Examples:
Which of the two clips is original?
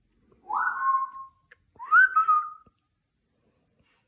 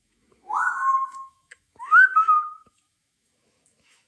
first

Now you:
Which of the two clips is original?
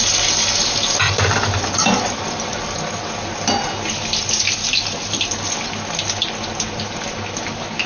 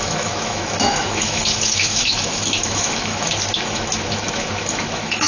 first